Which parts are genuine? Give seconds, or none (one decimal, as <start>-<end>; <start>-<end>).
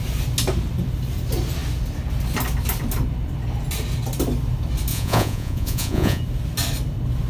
0.0-4.9; 6.2-7.3